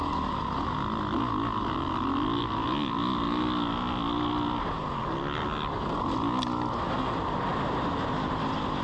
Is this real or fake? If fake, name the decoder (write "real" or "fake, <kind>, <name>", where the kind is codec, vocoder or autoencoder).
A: real